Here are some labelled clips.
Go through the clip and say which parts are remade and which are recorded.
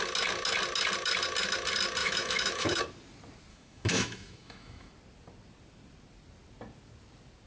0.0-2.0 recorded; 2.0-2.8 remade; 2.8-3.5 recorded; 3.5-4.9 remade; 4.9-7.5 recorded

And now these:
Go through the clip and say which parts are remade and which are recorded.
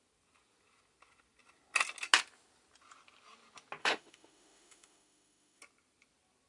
0.0-3.8 recorded; 3.8-5.6 remade; 5.6-6.5 recorded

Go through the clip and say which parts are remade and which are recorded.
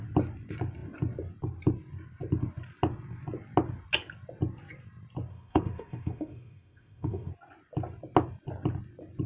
0.0-5.3 recorded; 5.3-7.3 remade; 7.3-9.3 recorded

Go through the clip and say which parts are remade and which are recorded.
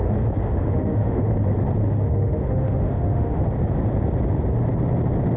0.0-0.4 recorded; 0.4-1.3 remade; 1.3-1.8 recorded; 1.8-3.4 remade; 3.4-5.4 recorded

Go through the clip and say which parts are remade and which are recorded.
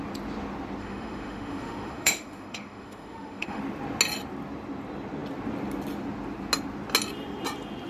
0.0-0.8 recorded; 0.8-3.6 remade; 3.6-7.9 recorded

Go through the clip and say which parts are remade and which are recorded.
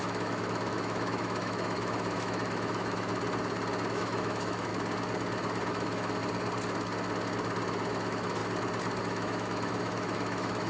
0.0-3.1 remade; 3.1-3.9 recorded; 3.9-4.7 remade; 4.7-5.7 recorded; 5.7-6.2 remade; 6.2-7.9 recorded; 7.9-8.4 remade; 8.4-9.0 recorded; 9.0-10.7 remade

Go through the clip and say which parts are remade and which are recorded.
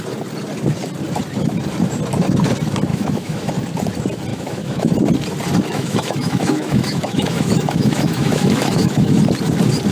0.0-2.9 recorded; 2.9-3.5 remade; 3.5-4.3 recorded; 4.3-4.9 remade; 4.9-5.7 recorded; 5.7-9.2 remade; 9.2-9.9 recorded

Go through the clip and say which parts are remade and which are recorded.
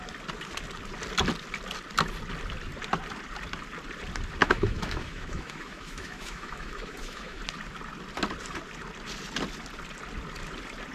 0.0-4.4 recorded; 4.4-7.4 remade; 7.4-10.9 recorded